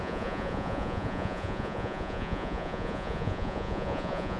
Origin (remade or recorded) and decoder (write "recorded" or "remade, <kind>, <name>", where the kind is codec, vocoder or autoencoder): remade, vocoder, Vocos